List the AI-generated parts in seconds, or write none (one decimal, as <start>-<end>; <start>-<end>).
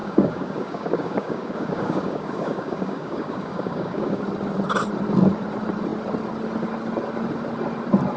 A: 0.0-4.2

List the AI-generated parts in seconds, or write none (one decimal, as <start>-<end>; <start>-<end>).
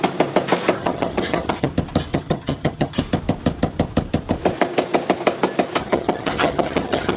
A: 0.8-1.7; 2.1-3.0; 5.8-7.2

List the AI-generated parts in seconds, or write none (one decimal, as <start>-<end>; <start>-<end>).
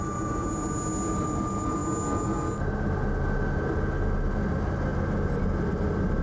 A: 0.0-0.5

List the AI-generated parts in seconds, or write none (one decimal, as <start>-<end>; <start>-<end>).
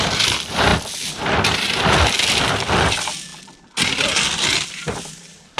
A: 0.7-2.7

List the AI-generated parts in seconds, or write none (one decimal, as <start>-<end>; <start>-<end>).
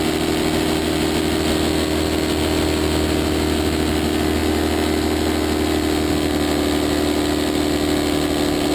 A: none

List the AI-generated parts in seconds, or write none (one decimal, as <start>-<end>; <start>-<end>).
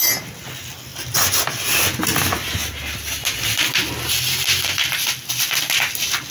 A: none